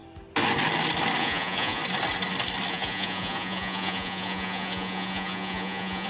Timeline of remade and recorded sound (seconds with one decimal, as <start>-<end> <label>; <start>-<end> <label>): 0.0-1.2 recorded; 1.2-1.8 remade; 1.8-2.7 recorded; 2.7-6.1 remade